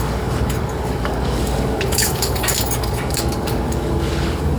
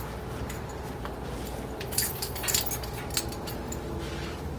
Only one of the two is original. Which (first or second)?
second